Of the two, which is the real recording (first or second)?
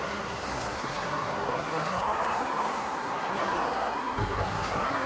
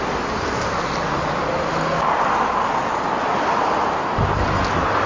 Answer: second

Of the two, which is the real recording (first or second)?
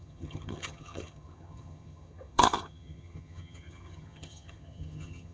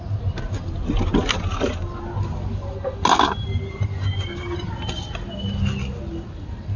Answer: second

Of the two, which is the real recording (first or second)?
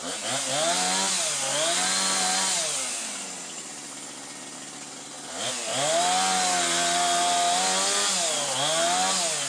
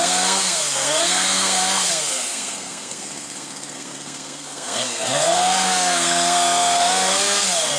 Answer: first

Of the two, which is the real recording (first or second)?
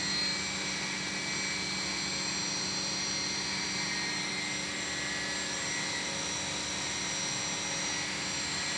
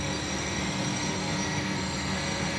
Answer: first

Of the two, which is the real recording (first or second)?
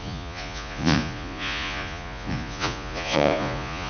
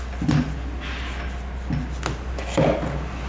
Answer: second